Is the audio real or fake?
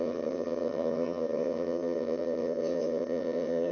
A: fake